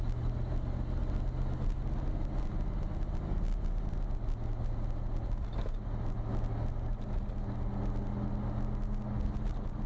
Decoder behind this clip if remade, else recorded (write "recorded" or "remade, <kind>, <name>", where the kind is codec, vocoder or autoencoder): recorded